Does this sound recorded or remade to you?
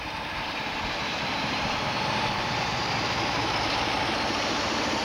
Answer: remade